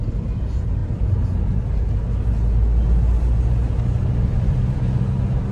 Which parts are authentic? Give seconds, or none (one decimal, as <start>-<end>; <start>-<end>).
0.0-4.3; 5.0-5.5